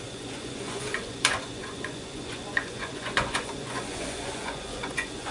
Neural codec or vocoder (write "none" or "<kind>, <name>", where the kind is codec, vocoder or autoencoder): vocoder, Vocos